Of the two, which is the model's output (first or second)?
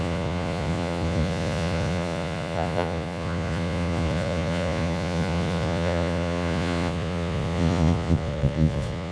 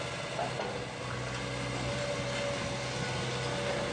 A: first